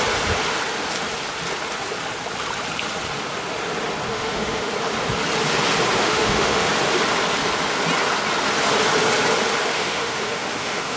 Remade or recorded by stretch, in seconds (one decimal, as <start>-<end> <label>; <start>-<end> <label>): 0.0-4.1 recorded; 4.1-4.7 remade; 4.7-6.0 recorded; 6.0-6.7 remade; 6.7-9.7 recorded; 9.7-11.0 remade